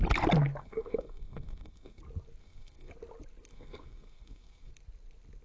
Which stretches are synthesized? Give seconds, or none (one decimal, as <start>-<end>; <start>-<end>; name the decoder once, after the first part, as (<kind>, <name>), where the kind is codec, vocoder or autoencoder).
0.6-2.0 (codec, SNAC); 2.4-2.9; 3.5-4.7